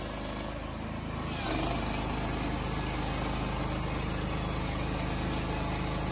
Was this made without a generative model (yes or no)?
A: yes